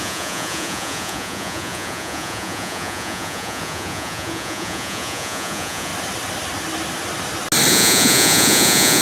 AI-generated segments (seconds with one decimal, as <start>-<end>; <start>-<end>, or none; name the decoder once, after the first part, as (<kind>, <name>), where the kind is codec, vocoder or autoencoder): 0.0-5.9 (vocoder, Vocos); 7.7-9.0